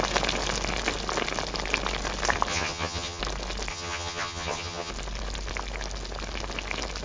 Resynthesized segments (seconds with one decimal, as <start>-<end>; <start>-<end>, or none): 2.5-3.2; 3.7-4.9